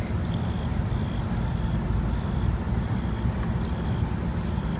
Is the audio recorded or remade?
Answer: recorded